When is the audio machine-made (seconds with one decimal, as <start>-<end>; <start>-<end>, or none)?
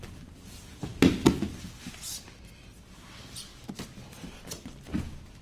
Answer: none